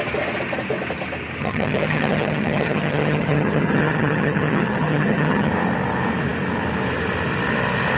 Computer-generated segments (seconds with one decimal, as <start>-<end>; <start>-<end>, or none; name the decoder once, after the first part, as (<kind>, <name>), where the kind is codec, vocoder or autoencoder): 1.4-5.5 (vocoder, HiFi-GAN)